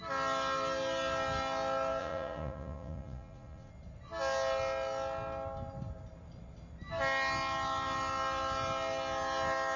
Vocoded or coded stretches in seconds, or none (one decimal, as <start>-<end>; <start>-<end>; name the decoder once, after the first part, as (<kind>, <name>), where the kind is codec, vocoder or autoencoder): 2.0-3.7 (vocoder, Vocos)

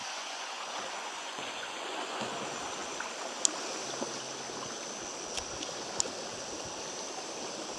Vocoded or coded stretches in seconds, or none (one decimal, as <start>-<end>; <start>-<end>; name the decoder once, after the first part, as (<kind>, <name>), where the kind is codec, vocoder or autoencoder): 0.0-2.3 (vocoder, Vocos)